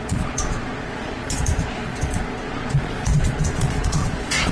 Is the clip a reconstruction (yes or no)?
yes